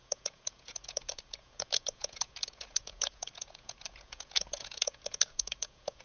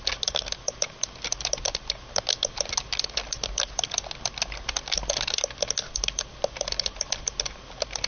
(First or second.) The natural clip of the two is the second